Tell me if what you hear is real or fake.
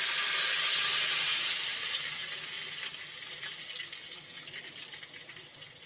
real